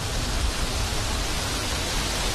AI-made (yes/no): no